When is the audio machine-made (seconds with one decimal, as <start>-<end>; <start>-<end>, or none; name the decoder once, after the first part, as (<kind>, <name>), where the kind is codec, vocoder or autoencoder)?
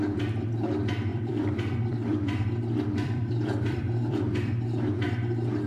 1.1-4.5 (vocoder, BigVGAN v2)